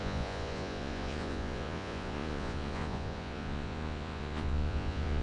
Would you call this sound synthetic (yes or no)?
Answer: yes